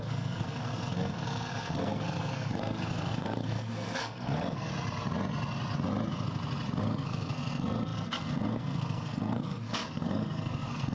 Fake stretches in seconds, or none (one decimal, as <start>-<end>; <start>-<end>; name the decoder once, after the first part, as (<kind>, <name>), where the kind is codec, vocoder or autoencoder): 0.0-4.7 (codec, SNAC); 6.8-10.9